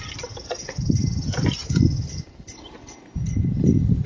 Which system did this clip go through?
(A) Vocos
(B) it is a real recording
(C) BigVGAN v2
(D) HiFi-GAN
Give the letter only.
B